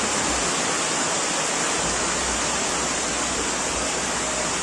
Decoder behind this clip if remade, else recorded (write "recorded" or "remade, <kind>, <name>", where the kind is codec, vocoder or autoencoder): recorded